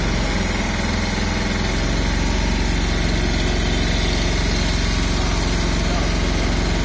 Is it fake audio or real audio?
real